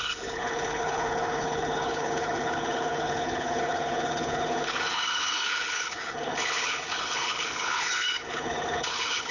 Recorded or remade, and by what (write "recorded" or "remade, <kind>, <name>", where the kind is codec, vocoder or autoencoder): remade, codec, HILCodec